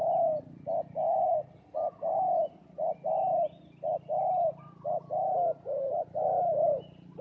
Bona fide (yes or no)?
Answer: yes